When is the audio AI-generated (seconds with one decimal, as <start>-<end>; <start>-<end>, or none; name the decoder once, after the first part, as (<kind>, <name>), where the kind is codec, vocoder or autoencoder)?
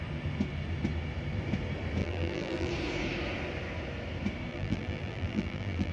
2.0-2.7 (vocoder, BigVGAN v2); 4.5-5.9